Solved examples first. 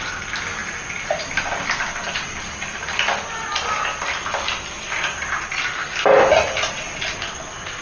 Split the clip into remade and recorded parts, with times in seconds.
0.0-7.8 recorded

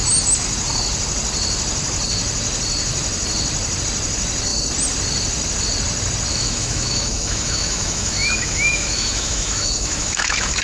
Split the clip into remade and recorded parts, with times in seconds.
0.0-6.3 recorded; 6.3-10.6 remade